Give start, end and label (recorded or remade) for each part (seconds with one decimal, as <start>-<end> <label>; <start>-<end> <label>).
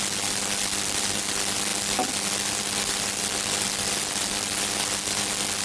0.0-5.6 recorded